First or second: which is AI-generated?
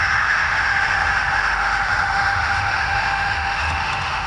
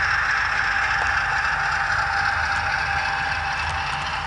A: first